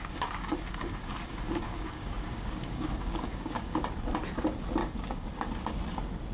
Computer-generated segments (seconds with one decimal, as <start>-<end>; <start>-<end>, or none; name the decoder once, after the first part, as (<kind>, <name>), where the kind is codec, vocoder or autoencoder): 0.0-3.8 (codec, DAC); 4.8-5.5